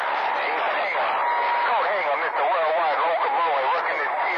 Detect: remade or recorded recorded